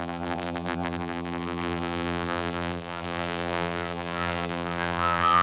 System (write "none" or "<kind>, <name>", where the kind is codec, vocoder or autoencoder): vocoder, BigVGAN v2